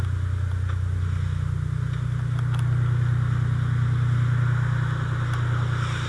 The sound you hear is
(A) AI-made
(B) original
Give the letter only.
B